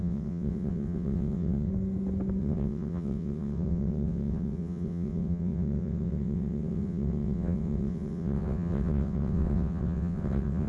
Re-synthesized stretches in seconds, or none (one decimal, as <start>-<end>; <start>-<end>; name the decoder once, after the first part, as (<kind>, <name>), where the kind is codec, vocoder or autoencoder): 0.0-1.7 (vocoder, WaveNeXt); 2.4-10.7